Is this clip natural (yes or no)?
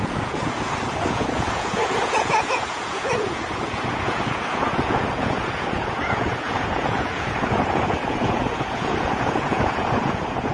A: no